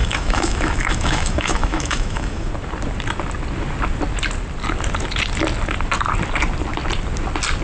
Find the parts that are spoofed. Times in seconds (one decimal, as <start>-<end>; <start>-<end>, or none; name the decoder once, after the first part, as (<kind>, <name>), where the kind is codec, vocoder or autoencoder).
0.0-2.5 (autoencoder, DAC-VAE)